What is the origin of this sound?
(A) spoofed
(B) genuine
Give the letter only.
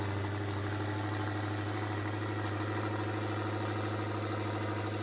B